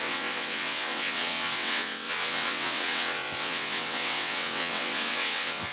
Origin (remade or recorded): remade